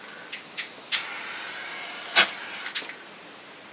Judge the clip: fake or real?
real